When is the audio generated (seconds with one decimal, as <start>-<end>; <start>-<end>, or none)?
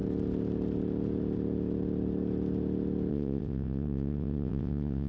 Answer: 3.1-5.1